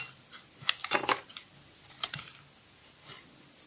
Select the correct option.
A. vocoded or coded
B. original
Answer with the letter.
B